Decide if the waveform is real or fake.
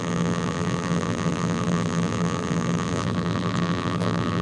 fake